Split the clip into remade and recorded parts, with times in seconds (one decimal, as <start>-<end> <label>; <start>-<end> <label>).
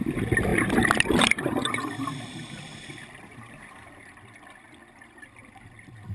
0.0-0.5 recorded; 0.5-4.1 remade; 4.1-6.1 recorded